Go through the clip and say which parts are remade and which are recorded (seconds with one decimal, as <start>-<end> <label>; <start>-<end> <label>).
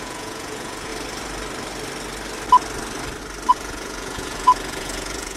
0.0-0.9 remade; 0.9-3.5 recorded; 3.5-5.4 remade